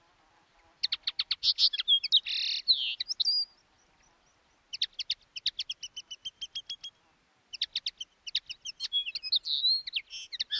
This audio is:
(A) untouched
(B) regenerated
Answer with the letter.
A